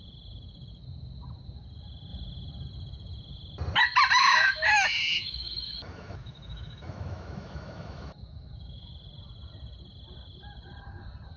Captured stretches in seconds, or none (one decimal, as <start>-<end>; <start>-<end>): 0.0-4.2; 8.9-11.4